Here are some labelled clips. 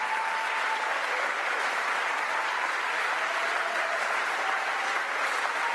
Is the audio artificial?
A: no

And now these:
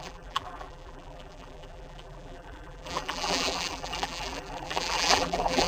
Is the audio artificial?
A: yes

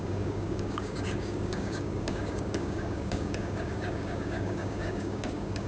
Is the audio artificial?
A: yes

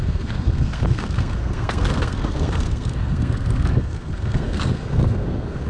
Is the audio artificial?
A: yes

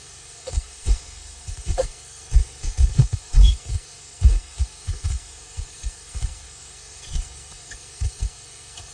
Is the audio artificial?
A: yes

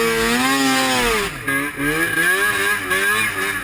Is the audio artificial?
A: no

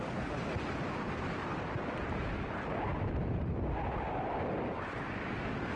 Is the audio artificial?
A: yes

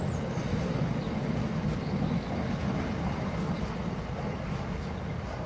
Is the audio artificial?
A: no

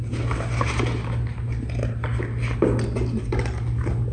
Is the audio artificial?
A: no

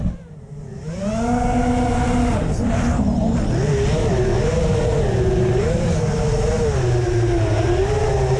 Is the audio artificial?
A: no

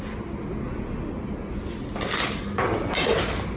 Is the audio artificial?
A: no